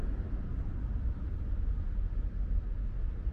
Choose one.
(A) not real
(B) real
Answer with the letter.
B